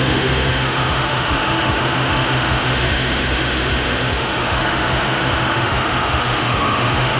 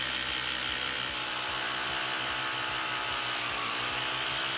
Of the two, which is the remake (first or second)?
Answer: first